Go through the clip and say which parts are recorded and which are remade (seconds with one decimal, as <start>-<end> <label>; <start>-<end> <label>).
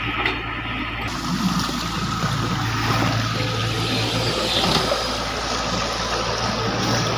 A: 0.0-7.2 recorded